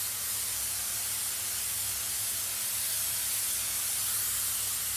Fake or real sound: real